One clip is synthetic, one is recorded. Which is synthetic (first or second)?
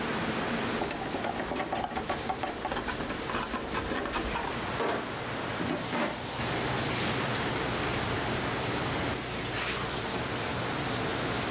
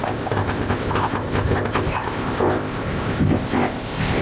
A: second